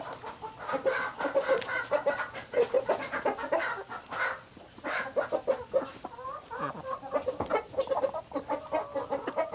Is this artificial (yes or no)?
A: no